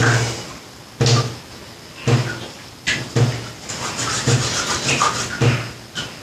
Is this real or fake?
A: real